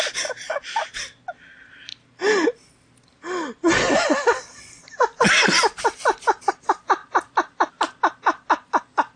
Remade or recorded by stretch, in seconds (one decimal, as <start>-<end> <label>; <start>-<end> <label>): 0.0-9.2 recorded

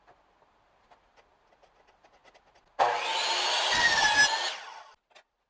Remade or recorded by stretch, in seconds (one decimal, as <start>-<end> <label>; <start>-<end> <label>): 0.0-5.5 recorded

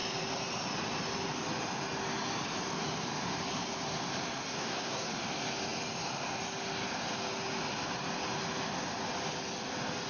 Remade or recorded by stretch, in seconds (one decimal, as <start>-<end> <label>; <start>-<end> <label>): 0.0-4.5 recorded; 4.5-5.1 remade; 5.1-10.1 recorded

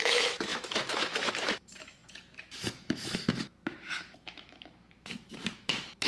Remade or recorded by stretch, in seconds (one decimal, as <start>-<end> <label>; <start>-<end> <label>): 0.0-6.1 remade

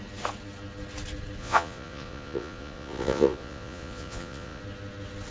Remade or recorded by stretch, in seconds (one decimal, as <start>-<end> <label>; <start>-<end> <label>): 0.0-1.4 recorded; 1.4-4.6 remade; 4.6-5.3 recorded

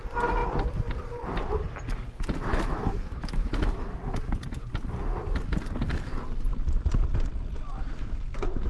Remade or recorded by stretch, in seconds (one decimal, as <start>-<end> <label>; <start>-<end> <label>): 0.0-2.5 recorded; 2.5-4.0 remade; 4.0-7.8 recorded; 7.8-8.7 remade

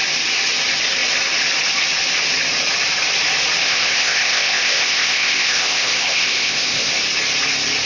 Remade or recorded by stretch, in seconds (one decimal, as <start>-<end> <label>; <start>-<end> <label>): 0.0-3.6 recorded; 3.6-6.9 remade; 6.9-7.9 recorded

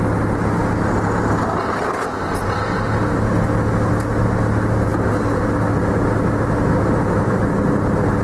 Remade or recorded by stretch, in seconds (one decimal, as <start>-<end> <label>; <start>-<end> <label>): 0.0-8.2 recorded